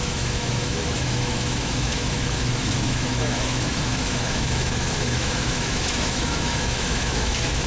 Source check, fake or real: fake